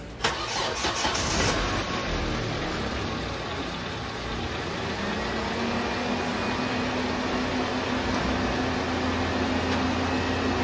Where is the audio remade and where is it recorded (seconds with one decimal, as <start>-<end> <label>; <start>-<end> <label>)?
0.0-10.6 recorded